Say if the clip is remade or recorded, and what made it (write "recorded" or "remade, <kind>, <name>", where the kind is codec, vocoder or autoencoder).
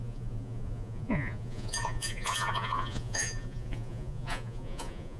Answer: remade, vocoder, Vocos